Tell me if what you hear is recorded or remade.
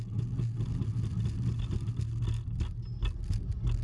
recorded